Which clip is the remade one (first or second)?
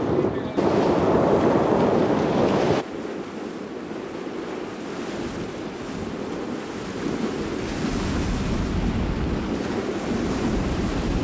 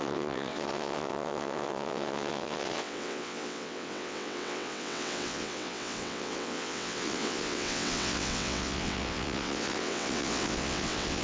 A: second